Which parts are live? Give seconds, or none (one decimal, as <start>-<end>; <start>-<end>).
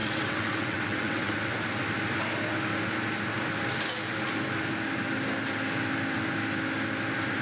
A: 1.3-7.4